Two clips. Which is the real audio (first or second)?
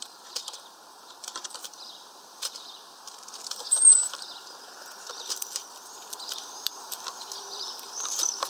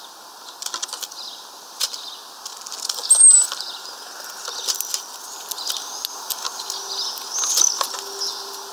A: second